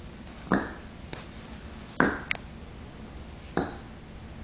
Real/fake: real